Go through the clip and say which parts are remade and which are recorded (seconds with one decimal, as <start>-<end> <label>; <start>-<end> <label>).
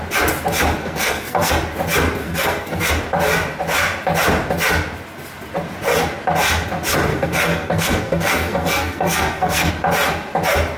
0.0-0.8 recorded; 0.8-1.5 remade; 1.5-2.2 recorded; 2.2-2.9 remade; 2.9-7.1 recorded; 7.1-9.7 remade; 9.7-10.8 recorded